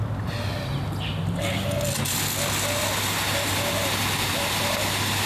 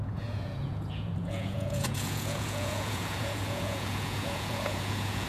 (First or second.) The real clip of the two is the first